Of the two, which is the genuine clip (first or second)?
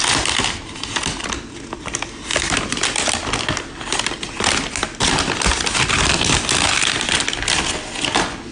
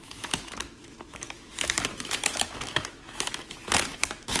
first